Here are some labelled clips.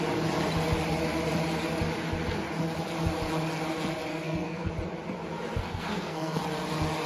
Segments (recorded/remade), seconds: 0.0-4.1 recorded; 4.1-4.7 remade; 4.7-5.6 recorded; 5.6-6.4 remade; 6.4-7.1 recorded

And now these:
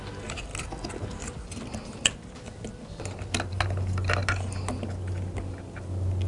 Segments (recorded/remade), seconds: 0.0-6.3 recorded

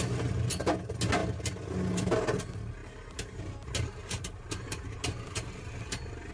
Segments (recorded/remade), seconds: 0.0-2.8 recorded; 2.8-3.4 remade; 3.4-4.0 recorded; 4.0-5.7 remade; 5.7-6.3 recorded

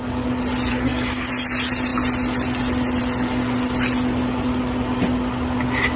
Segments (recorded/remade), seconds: 0.0-0.7 recorded; 0.7-1.3 remade; 1.3-6.0 recorded

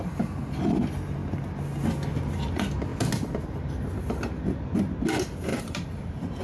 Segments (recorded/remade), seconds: 0.0-5.5 recorded; 5.5-6.4 remade

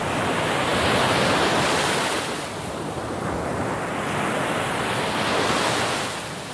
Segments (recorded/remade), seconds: 0.0-6.5 recorded

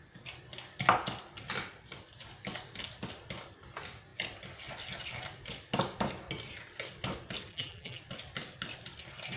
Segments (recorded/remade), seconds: 0.0-7.5 recorded; 7.5-8.0 remade; 8.0-9.4 recorded

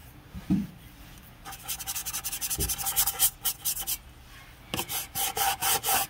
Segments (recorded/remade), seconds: 0.0-0.7 remade; 0.7-5.6 recorded; 5.6-6.1 remade